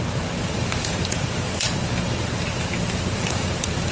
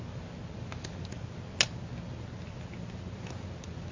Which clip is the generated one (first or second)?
first